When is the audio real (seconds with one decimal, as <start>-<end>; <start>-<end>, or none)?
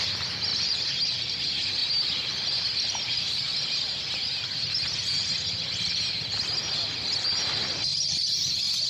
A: 0.0-0.5; 1.3-7.9; 8.5-8.9